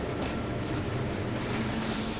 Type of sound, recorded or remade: recorded